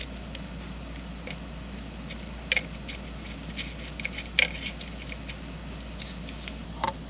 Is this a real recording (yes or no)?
yes